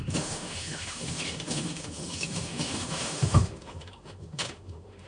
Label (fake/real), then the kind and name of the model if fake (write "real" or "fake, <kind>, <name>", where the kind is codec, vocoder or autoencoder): fake, autoencoder, DAC-VAE